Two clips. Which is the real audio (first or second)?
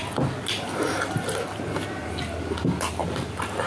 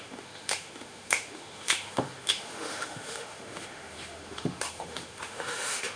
first